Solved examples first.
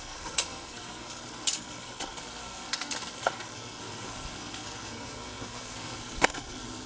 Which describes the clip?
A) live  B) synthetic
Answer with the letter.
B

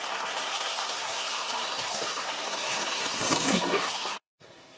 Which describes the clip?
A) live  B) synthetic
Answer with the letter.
B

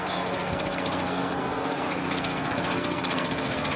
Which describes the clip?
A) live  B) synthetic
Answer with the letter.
B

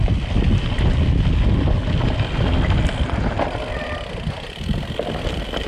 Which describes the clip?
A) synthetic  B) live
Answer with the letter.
B